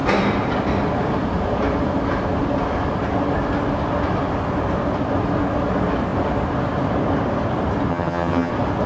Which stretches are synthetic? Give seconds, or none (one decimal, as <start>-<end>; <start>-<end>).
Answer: 7.9-8.5